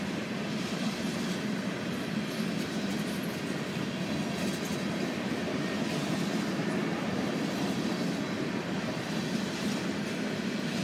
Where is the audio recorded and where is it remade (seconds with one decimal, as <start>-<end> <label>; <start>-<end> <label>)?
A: 0.0-10.8 recorded